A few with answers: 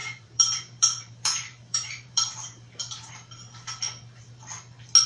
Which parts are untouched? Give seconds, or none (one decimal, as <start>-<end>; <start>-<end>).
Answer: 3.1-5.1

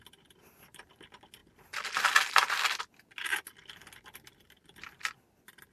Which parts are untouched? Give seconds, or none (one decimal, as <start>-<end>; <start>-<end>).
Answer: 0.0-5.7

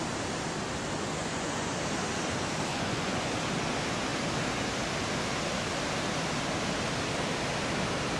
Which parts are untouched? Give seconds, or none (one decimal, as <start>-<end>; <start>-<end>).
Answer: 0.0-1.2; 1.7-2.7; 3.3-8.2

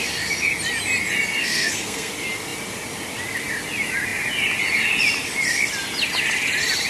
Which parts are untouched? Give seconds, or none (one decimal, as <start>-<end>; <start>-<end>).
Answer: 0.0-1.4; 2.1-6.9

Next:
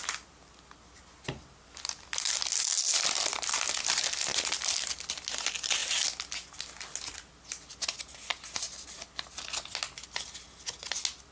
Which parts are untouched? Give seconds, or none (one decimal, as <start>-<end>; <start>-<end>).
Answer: 0.0-11.3

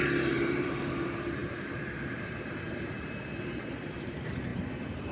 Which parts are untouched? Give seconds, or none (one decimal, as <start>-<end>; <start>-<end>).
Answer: none

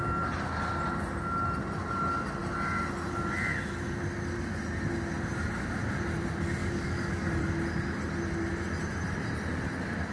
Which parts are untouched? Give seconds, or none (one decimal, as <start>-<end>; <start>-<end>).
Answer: 0.0-6.6; 7.4-10.1